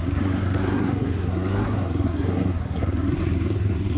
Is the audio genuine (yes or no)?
no